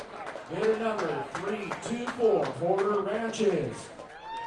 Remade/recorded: recorded